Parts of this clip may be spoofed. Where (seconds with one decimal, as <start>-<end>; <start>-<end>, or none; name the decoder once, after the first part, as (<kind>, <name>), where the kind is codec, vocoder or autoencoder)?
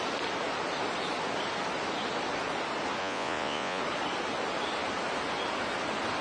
3.0-3.8 (vocoder, Vocos)